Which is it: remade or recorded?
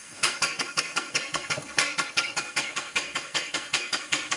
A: remade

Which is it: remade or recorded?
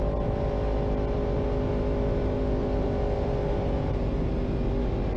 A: recorded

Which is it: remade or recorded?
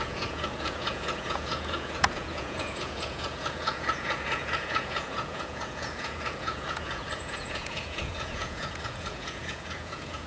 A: remade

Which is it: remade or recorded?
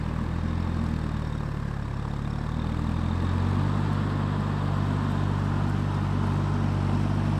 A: recorded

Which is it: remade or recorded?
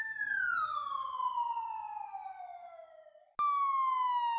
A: recorded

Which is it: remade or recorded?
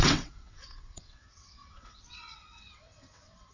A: remade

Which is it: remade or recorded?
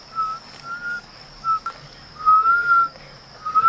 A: remade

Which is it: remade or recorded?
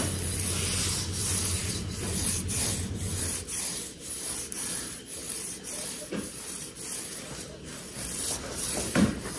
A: remade